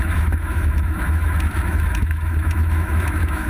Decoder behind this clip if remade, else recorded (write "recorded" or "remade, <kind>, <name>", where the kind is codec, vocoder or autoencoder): remade, autoencoder, DAC-VAE